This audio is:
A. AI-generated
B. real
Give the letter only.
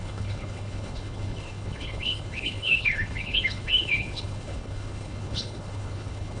A